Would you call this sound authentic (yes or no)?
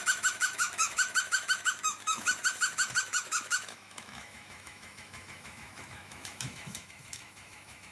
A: no